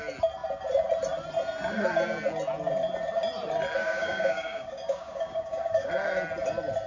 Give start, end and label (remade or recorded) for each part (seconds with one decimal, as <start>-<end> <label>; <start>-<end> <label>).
0.0-3.8 recorded; 3.8-5.9 remade; 5.9-6.9 recorded